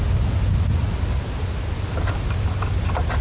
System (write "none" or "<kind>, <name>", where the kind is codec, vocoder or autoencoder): none